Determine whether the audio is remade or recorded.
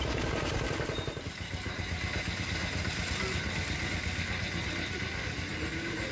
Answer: recorded